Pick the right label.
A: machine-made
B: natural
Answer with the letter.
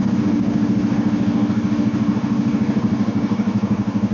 A